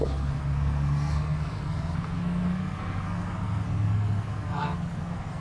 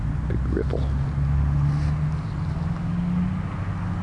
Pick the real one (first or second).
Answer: second